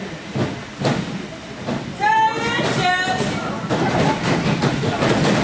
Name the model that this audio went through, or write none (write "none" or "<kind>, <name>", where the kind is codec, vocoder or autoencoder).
none